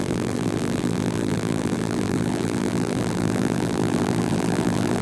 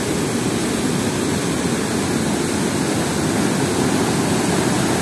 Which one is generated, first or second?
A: first